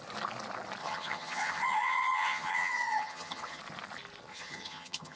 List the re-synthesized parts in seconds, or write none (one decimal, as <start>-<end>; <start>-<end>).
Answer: 0.8-3.6; 4.3-5.2